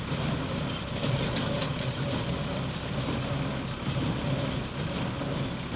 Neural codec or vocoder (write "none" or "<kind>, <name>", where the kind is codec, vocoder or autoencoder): none